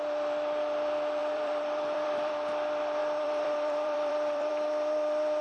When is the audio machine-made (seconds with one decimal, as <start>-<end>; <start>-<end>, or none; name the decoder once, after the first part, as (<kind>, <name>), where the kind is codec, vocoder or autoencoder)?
1.2-2.3 (vocoder, BigVGAN v2); 3.0-4.5